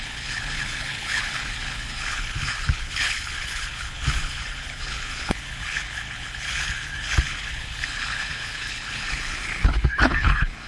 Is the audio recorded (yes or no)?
no